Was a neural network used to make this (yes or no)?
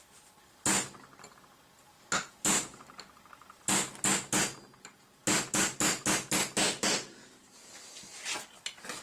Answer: no